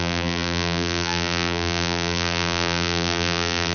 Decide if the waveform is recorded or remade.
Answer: remade